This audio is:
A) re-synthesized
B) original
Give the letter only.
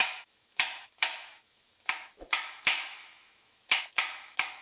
A